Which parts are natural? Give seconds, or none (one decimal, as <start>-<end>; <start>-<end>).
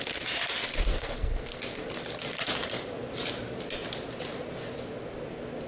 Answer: 0.0-0.9; 1.6-5.7